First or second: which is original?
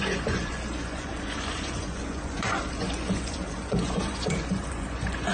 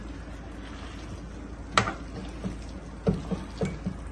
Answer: second